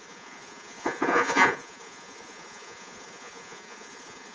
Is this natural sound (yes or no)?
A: no